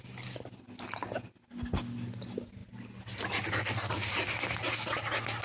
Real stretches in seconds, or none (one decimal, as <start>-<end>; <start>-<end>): 0.0-5.4